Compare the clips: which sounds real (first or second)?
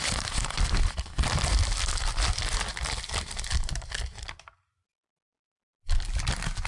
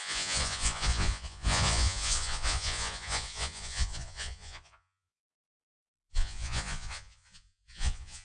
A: first